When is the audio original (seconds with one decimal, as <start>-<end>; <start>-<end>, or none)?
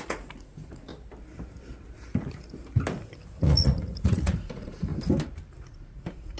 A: 0.9-3.3; 4.9-5.6